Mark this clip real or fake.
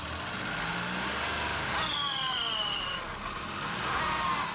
real